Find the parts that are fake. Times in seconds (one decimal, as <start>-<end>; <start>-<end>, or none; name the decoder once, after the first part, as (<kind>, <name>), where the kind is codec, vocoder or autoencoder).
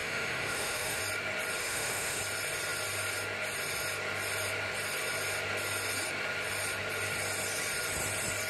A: 0.0-1.0 (autoencoder, DAC-VAE); 1.6-2.2